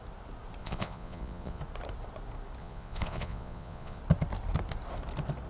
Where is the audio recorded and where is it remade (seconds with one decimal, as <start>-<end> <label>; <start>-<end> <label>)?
0.0-0.6 recorded; 0.6-1.6 remade; 1.6-2.6 recorded; 2.6-4.0 remade; 4.0-5.5 recorded